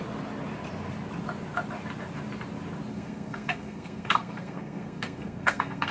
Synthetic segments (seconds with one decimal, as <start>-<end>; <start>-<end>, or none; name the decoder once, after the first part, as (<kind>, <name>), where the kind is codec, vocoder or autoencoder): 2.9-5.9 (codec, SNAC)